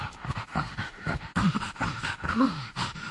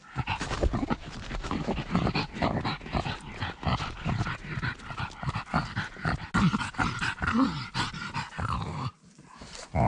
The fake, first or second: first